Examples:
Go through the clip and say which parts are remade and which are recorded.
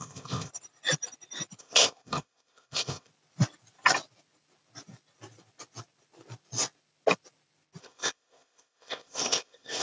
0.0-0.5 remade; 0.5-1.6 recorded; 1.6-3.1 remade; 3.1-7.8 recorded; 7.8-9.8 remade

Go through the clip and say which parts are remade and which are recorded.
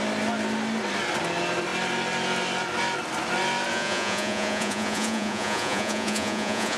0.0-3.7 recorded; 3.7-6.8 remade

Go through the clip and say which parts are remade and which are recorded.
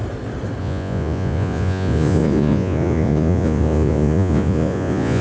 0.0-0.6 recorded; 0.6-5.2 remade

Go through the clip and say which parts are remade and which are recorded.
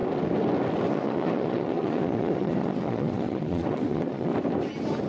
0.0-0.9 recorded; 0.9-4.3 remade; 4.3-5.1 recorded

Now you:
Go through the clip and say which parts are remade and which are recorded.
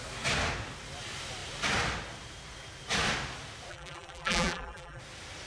0.0-3.7 recorded; 3.7-5.0 remade; 5.0-5.5 recorded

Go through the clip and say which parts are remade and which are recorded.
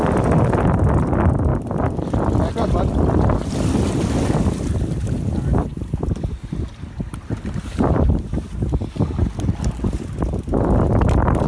0.0-11.5 recorded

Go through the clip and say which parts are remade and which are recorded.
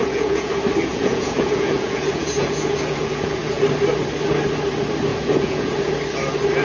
0.0-0.5 remade; 0.5-0.9 recorded; 0.9-3.6 remade; 3.6-5.1 recorded; 5.1-5.9 remade; 5.9-6.6 recorded